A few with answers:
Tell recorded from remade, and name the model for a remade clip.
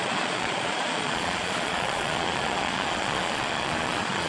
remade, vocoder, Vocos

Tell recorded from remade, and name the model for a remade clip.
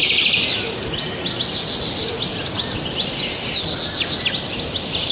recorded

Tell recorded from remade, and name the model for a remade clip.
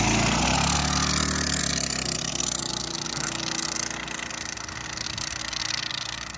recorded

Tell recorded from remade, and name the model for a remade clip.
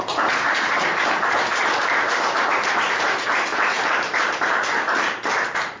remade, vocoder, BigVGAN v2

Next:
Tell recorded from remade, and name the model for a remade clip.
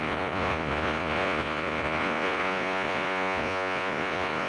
remade, vocoder, Vocos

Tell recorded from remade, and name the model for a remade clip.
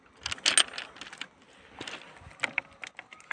recorded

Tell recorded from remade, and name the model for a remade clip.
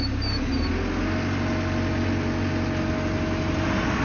recorded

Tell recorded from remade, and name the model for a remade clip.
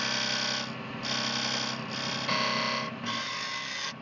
recorded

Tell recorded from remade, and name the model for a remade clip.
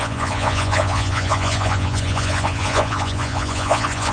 remade, vocoder, Vocos